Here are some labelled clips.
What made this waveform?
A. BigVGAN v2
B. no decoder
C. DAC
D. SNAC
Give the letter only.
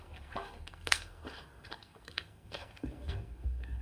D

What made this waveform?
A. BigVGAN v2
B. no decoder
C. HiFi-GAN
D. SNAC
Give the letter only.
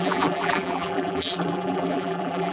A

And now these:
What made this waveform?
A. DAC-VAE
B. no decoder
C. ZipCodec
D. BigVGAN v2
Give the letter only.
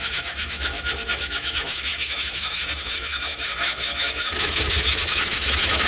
A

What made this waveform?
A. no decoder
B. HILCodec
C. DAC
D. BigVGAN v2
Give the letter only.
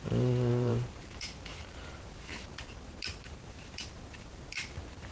D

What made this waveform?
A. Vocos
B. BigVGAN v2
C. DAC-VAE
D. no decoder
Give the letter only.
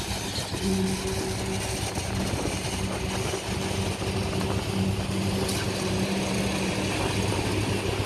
D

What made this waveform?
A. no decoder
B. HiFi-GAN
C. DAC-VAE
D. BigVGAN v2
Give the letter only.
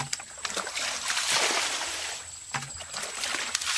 A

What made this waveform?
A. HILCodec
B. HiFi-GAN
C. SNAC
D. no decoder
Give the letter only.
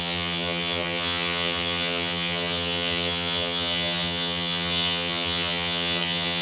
B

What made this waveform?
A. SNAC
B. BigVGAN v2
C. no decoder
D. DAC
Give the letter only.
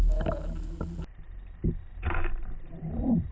C